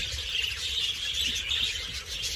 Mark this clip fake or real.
real